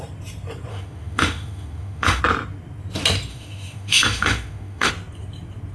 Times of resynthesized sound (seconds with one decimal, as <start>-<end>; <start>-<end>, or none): 0.7-2.2; 3.3-4.9